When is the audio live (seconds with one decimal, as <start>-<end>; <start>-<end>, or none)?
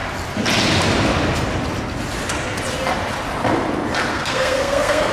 0.0-4.1